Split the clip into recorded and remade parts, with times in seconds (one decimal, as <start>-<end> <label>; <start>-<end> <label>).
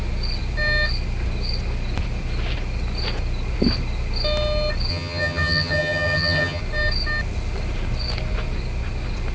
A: 0.0-4.9 recorded; 4.9-6.6 remade; 6.6-9.3 recorded